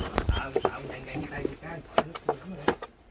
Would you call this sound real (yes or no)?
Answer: no